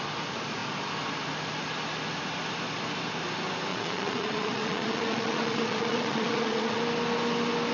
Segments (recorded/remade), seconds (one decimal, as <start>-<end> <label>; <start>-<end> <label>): 0.0-3.7 recorded; 3.7-6.8 remade; 6.8-7.7 recorded

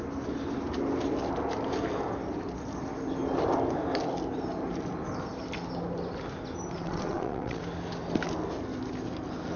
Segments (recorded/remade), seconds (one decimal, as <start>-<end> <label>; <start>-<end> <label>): 0.0-6.8 recorded; 6.8-7.6 remade; 7.6-9.6 recorded

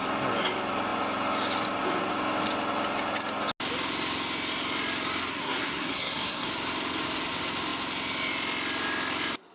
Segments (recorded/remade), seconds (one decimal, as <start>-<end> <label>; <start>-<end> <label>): 0.0-5.3 recorded; 5.3-6.5 remade; 6.5-9.5 recorded

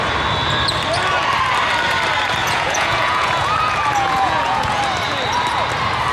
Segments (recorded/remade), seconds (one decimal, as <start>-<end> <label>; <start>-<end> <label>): 0.0-2.4 recorded; 2.4-4.8 remade; 4.8-6.1 recorded